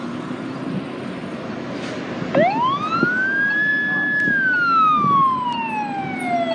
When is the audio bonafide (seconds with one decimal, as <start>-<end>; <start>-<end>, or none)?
0.0-6.5

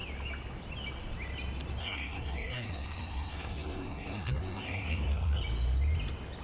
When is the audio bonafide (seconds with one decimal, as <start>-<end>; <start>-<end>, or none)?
0.0-1.8; 5.4-6.4

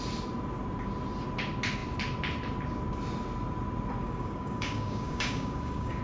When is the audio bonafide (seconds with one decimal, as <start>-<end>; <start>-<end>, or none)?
0.0-4.0